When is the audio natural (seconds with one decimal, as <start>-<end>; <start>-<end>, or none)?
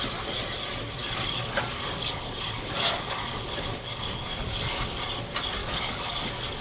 0.0-1.0; 5.0-5.6